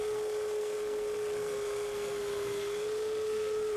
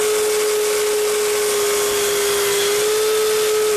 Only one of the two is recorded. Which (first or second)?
second